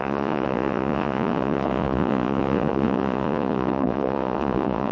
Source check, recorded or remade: remade